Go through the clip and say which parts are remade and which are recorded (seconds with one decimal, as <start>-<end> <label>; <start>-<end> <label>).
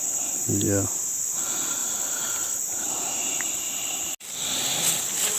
0.0-5.4 recorded